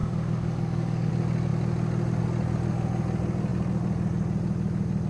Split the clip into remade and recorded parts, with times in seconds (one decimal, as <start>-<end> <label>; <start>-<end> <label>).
0.0-1.1 remade; 1.1-5.1 recorded